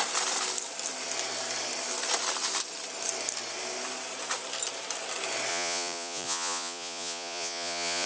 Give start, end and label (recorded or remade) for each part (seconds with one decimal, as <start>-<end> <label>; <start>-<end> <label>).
0.0-5.5 recorded; 5.5-8.1 remade